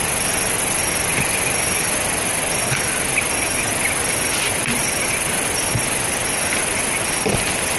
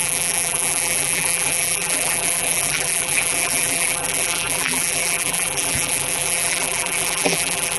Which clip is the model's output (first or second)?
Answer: second